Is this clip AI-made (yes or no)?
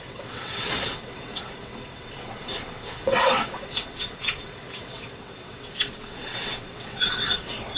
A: yes